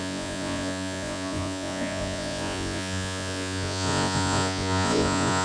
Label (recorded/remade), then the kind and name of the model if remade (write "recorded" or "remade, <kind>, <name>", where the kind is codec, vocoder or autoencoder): remade, vocoder, Vocos